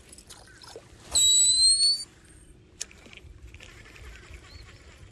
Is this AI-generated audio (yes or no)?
no